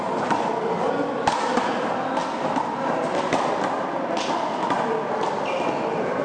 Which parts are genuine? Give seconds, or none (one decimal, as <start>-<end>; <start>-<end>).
0.0-6.2